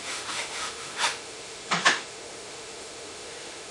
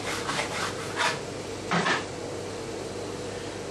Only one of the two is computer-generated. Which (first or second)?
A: first